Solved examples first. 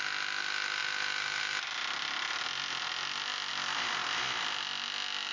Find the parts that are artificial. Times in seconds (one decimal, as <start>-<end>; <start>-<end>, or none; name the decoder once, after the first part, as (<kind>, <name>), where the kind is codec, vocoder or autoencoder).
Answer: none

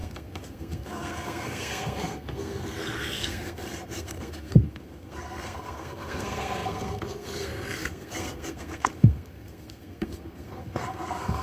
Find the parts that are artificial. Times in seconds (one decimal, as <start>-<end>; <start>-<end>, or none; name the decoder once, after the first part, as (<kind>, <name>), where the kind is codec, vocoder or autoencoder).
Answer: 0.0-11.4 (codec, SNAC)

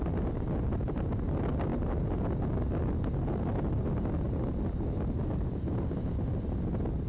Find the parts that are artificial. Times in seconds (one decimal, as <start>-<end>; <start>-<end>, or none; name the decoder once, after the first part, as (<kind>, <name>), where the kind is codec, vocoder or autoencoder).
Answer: none

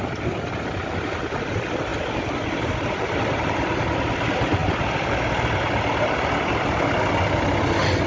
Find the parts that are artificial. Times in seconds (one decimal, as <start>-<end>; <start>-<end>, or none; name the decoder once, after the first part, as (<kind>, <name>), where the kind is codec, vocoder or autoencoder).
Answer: none